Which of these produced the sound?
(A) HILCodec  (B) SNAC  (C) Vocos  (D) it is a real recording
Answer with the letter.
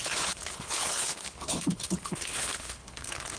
A